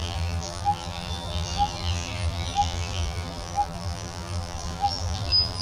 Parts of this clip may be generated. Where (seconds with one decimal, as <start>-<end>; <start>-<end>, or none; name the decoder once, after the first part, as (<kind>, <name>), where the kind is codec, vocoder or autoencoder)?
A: 0.0-5.6 (vocoder, BigVGAN v2)